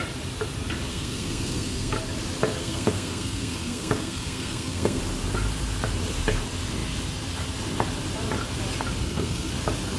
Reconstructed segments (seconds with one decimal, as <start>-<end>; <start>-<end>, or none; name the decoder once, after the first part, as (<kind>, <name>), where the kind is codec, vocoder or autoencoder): 0.9-1.9 (codec, SNAC); 2.6-5.0; 9.0-9.5